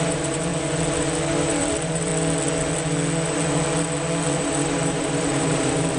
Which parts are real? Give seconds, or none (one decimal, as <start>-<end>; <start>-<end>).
0.5-1.5; 2.1-4.4

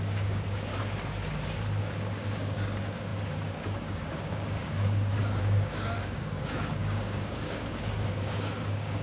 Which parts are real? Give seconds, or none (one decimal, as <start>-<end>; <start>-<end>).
0.7-1.8

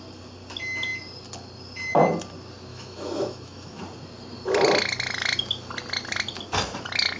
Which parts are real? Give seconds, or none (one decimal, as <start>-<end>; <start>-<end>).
0.0-2.7; 3.8-7.2

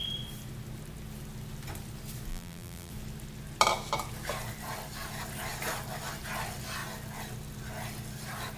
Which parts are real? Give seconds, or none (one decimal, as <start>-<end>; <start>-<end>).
0.0-2.3; 2.9-8.6

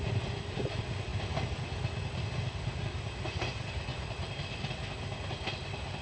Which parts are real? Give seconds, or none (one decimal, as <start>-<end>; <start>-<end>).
0.0-6.0

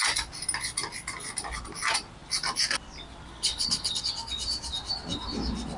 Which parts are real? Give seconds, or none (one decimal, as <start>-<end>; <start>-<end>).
0.0-3.3; 4.0-5.8

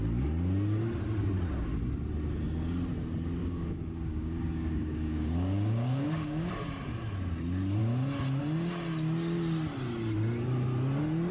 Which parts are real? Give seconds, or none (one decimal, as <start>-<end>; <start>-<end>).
0.0-3.4; 6.5-11.3